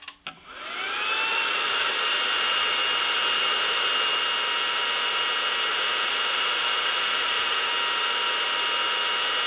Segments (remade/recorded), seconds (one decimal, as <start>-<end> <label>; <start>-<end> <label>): 0.0-1.3 recorded; 1.3-1.9 remade; 1.9-5.7 recorded; 5.7-7.7 remade; 7.7-9.5 recorded